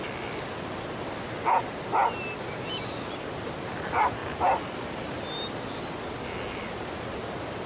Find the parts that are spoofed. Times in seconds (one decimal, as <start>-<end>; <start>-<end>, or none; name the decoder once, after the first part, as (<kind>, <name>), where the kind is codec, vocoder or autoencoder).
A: none